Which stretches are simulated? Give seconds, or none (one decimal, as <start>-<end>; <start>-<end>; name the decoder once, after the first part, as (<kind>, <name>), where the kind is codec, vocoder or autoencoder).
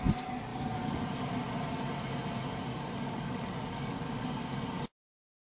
2.7-4.3 (codec, DAC)